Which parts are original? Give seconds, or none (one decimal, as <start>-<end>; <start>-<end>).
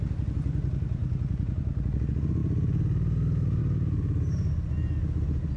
0.0-5.6